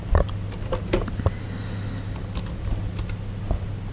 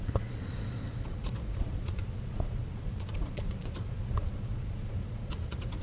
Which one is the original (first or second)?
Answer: first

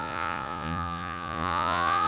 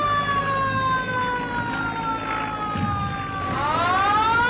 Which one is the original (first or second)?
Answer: second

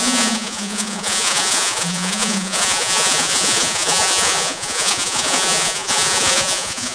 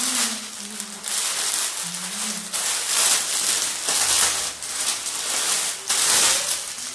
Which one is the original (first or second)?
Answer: second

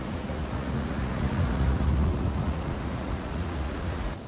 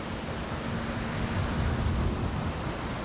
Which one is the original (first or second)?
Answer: second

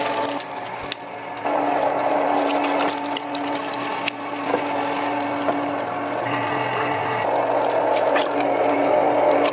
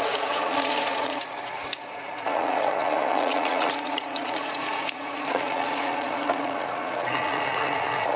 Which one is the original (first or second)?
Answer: first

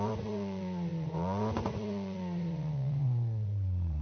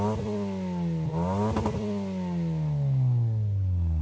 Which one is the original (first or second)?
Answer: second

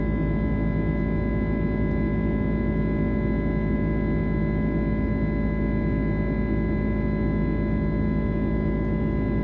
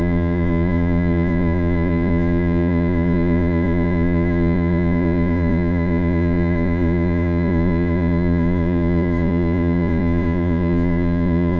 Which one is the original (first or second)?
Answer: first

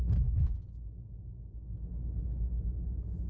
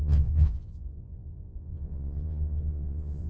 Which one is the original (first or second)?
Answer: first